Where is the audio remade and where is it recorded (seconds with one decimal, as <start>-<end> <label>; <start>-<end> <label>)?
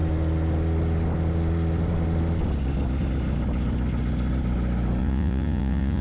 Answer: 0.0-5.0 recorded; 5.0-6.0 remade